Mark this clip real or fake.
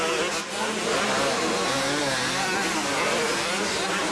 real